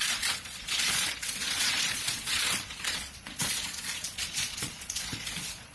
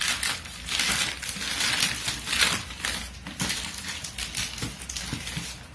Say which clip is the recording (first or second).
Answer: second